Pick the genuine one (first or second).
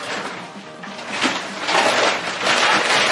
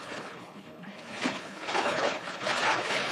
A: first